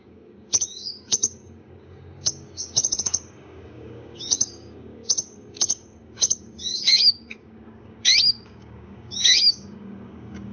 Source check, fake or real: fake